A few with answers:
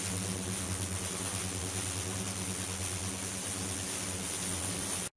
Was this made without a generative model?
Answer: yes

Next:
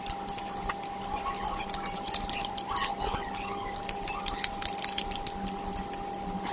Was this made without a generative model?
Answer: yes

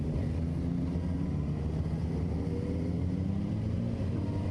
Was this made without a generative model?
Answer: yes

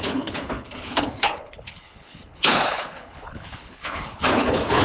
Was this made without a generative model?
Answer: no